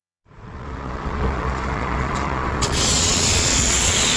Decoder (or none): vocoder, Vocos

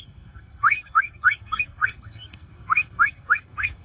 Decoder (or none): codec, SNAC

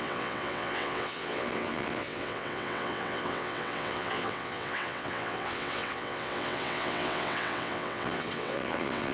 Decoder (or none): vocoder, WaveNeXt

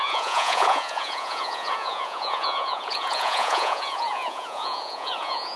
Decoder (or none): vocoder, Vocos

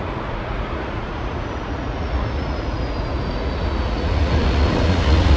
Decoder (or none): vocoder, Vocos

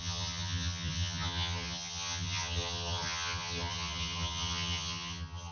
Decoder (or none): vocoder, HiFi-GAN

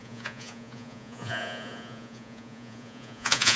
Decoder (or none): vocoder, Vocos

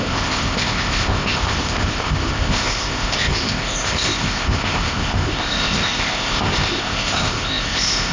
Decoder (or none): codec, ZipCodec